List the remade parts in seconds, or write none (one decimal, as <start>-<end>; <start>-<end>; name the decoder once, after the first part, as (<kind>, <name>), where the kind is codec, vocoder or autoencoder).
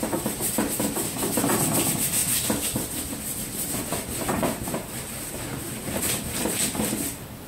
2.2-6.0 (vocoder, BigVGAN v2)